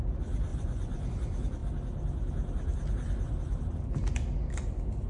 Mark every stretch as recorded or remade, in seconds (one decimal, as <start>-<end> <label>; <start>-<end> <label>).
0.0-0.5 recorded; 0.5-1.1 remade; 1.1-5.1 recorded